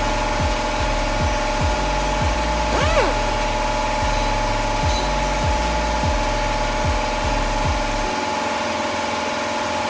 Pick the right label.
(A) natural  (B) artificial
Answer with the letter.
A